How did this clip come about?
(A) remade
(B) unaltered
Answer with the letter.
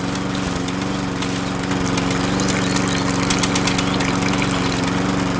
B